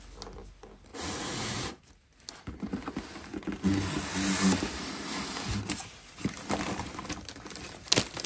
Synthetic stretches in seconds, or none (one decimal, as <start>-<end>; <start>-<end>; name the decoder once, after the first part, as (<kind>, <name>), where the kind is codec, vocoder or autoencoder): 0.9-1.9 (vocoder, Vocos)